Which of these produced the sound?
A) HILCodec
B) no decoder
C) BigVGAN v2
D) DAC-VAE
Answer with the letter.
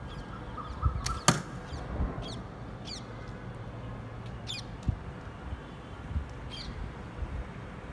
B